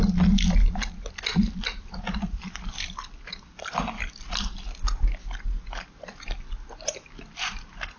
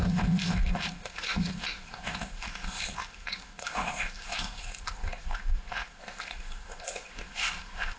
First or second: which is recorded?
first